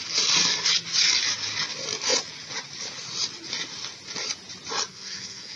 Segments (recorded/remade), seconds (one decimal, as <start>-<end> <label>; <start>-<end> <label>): 0.0-4.9 recorded; 4.9-5.6 remade